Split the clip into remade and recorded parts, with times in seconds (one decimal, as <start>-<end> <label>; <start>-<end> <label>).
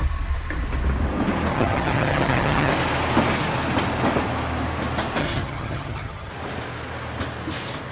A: 0.0-1.5 recorded; 1.5-2.7 remade; 2.7-5.2 recorded; 5.2-6.3 remade; 6.3-7.9 recorded